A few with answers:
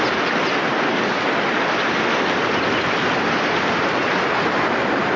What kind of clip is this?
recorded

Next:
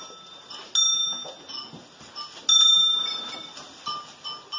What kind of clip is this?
recorded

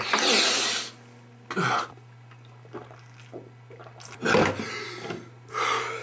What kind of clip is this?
recorded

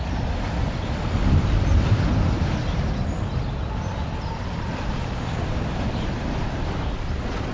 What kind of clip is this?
recorded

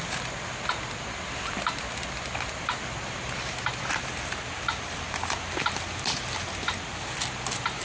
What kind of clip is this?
recorded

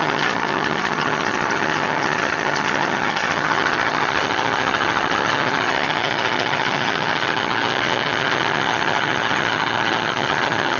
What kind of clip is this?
remade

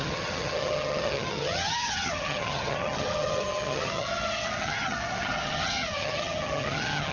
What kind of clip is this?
remade